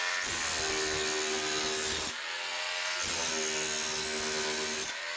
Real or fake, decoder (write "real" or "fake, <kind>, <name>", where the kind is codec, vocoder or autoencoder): real